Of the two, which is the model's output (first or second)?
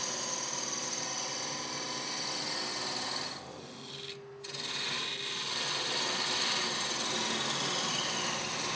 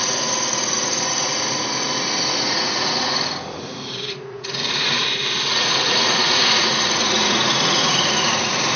second